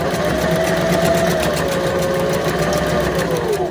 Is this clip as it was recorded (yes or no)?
yes